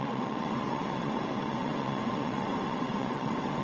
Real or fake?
fake